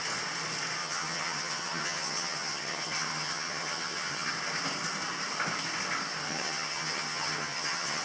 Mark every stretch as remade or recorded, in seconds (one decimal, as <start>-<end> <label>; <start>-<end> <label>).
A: 0.0-0.8 recorded; 0.8-4.3 remade; 4.3-6.2 recorded; 6.2-8.0 remade